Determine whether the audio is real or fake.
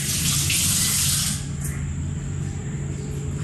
real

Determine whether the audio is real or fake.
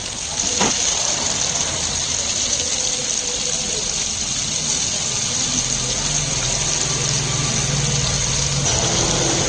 real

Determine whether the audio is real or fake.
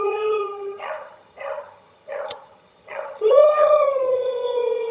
fake